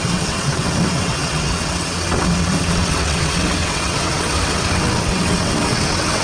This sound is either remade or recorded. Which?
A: remade